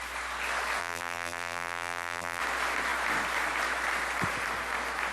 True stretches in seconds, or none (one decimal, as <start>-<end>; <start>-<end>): 0.0-0.8; 2.4-5.1